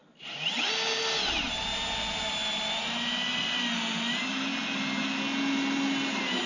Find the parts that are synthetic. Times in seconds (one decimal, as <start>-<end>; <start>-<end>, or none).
none